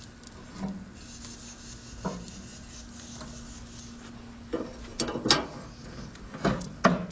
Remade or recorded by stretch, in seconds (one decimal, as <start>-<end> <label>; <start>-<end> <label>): 0.0-7.1 recorded